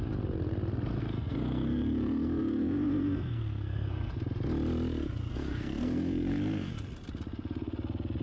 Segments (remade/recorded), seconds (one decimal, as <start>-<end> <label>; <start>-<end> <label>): 0.0-1.0 recorded; 1.0-4.1 remade; 4.1-5.3 recorded; 5.3-6.7 remade; 6.7-8.2 recorded